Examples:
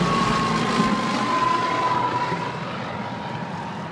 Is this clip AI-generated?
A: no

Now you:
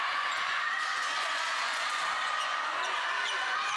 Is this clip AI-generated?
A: yes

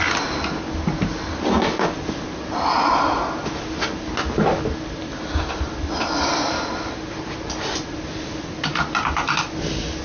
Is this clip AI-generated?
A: no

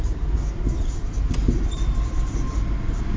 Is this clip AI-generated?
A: no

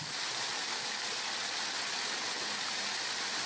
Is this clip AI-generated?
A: no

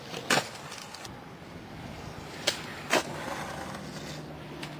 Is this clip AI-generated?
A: no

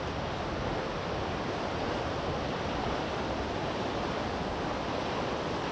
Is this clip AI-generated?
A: no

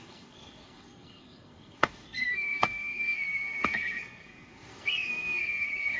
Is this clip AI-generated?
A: yes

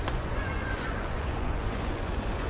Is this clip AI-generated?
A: yes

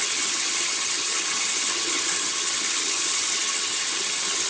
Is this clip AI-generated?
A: yes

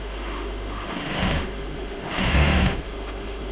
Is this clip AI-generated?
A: yes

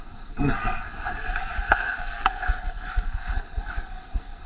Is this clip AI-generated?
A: yes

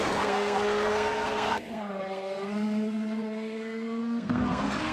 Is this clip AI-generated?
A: yes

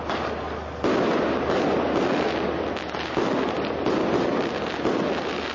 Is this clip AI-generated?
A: no